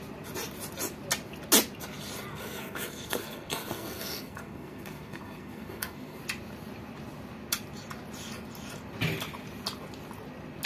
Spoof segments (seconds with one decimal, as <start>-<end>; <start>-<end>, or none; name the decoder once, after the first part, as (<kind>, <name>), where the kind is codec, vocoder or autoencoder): 2.3-6.2 (codec, SNAC)